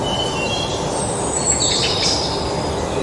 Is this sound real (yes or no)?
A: yes